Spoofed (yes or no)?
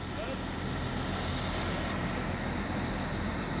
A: no